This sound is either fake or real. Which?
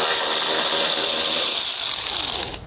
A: real